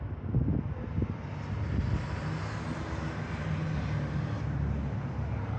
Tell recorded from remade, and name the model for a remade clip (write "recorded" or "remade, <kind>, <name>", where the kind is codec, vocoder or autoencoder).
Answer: recorded